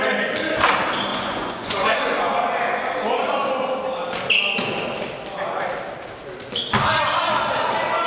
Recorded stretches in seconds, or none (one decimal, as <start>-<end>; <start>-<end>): 0.0-1.1; 2.3-8.1